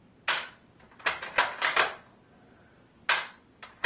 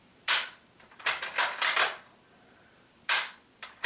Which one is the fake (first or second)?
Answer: second